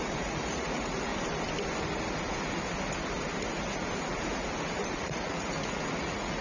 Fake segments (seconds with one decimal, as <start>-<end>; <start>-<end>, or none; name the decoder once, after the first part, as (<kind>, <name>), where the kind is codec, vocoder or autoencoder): 0.0-1.1 (vocoder, Vocos); 4.9-6.4